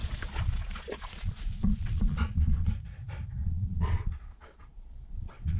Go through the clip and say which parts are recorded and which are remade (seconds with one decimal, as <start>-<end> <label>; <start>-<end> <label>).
0.0-2.7 remade; 2.7-3.4 recorded; 3.4-5.6 remade